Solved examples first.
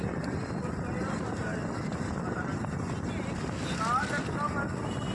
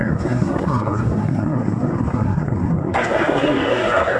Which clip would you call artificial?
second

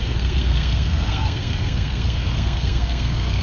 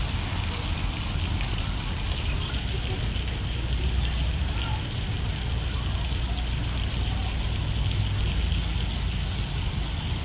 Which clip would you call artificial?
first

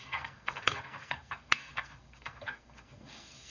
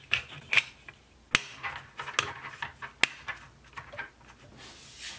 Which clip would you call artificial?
first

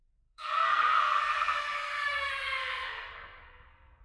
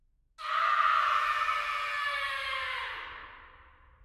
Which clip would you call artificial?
first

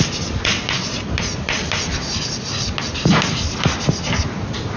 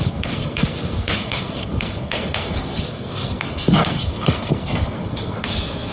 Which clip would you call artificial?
second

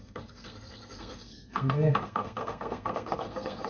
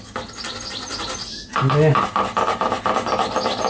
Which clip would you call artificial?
first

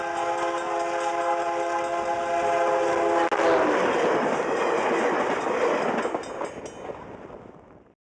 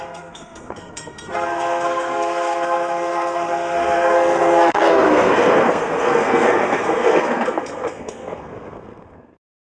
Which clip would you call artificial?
second